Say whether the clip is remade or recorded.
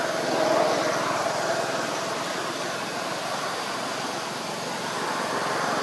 recorded